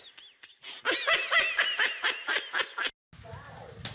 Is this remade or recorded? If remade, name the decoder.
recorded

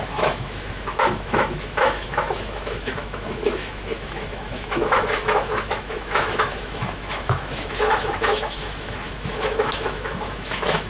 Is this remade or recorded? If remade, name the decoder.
remade, autoencoder, DAC-VAE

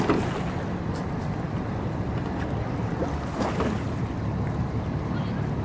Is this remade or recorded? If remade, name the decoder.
recorded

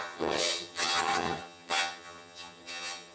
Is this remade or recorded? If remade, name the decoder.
remade, vocoder, HiFi-GAN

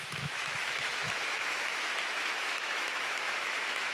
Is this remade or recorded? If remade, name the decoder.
remade, autoencoder, DAC-VAE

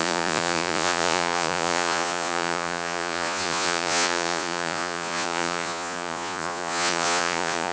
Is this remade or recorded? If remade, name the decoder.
remade, vocoder, Vocos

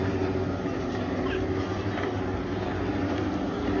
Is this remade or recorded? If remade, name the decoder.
recorded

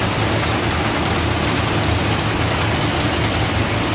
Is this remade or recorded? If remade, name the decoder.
recorded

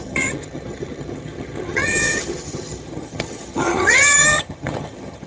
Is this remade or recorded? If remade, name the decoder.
remade, vocoder, HiFi-GAN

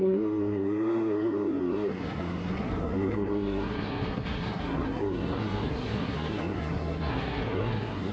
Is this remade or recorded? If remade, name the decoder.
remade, codec, SNAC